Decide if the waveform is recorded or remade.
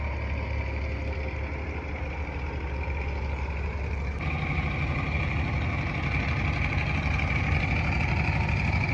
recorded